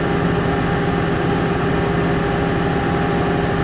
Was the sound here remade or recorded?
recorded